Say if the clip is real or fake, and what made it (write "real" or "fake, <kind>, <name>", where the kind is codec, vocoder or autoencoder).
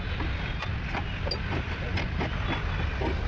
real